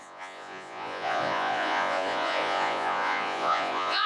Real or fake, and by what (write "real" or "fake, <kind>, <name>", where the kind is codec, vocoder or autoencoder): fake, vocoder, Vocos